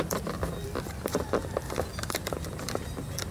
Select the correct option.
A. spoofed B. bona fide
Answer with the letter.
A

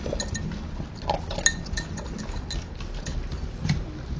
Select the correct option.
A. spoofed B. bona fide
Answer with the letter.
B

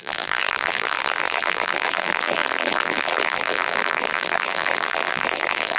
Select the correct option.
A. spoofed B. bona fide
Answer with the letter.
A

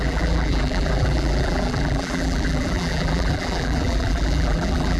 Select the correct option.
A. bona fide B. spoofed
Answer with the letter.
B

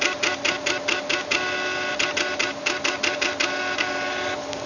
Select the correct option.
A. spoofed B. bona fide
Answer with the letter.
B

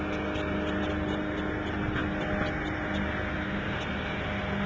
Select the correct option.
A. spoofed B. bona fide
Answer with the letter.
B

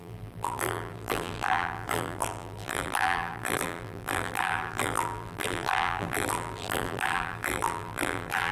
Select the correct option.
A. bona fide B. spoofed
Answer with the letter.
B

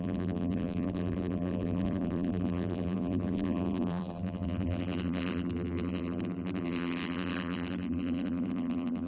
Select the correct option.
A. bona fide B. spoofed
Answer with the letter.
B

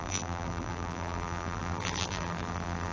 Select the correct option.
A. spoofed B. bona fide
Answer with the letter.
A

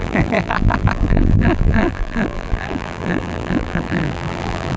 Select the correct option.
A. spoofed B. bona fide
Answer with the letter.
A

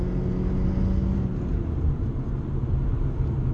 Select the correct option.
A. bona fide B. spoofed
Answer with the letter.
A